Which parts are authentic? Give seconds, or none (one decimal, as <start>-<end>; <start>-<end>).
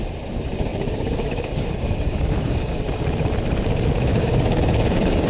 0.0-0.7; 2.8-4.1